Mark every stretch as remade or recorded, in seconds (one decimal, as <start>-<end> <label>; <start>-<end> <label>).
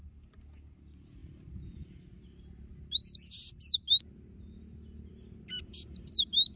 0.0-6.6 recorded